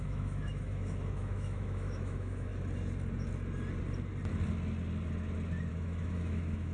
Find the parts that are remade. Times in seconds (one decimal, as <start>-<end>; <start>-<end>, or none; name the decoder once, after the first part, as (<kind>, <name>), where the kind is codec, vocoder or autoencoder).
0.0-2.5 (autoencoder, DAC-VAE); 5.7-6.7